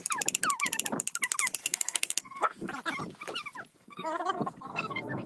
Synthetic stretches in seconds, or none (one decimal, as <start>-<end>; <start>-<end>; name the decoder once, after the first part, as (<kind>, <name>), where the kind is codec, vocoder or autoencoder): 1.6-2.7 (codec, SNAC); 3.7-5.3